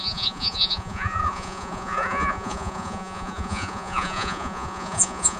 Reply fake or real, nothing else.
fake